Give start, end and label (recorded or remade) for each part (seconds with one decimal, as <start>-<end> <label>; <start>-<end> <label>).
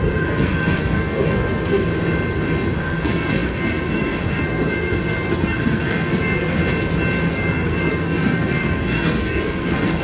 0.0-1.9 remade; 1.9-2.7 recorded; 2.7-6.6 remade; 6.6-7.3 recorded; 7.3-10.0 remade